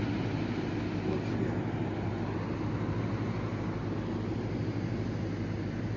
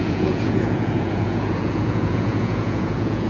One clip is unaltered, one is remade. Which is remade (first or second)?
second